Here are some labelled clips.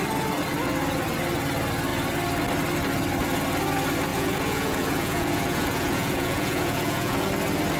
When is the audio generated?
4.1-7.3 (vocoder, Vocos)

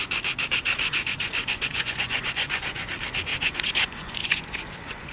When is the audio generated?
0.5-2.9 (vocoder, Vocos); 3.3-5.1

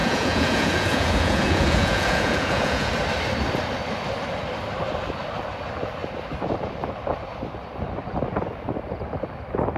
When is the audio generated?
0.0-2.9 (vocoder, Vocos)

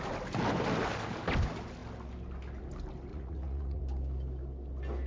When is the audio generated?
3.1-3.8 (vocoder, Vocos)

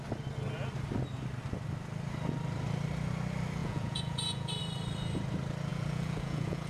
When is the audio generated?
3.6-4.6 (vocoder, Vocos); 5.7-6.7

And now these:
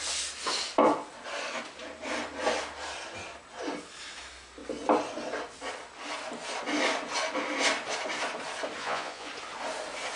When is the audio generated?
8.8-9.3 (vocoder, Vocos)

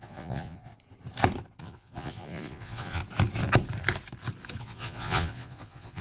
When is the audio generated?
0.0-0.7 (vocoder, Vocos); 1.6-3.0; 4.6-6.0